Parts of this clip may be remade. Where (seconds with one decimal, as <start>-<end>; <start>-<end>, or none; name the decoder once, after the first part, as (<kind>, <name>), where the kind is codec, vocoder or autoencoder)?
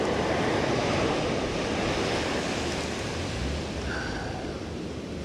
none